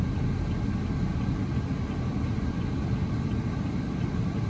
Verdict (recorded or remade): recorded